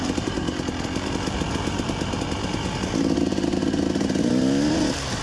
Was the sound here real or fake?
real